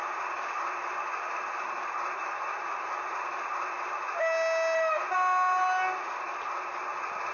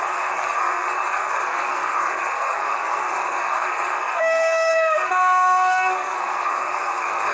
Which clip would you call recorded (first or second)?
first